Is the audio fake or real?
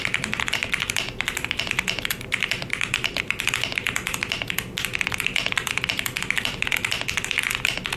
real